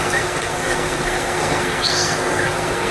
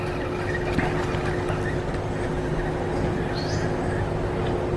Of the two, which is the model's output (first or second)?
first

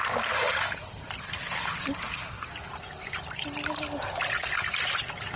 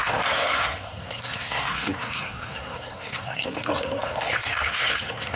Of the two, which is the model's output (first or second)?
second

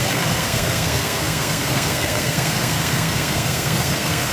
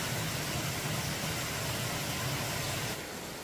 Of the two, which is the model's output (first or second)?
first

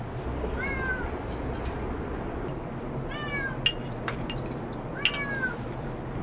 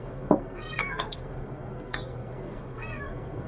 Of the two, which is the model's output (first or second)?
second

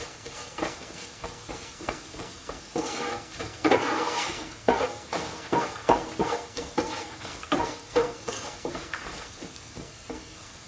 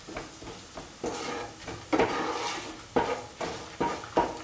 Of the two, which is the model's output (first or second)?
first